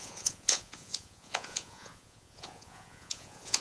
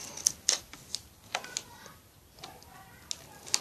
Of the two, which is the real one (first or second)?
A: second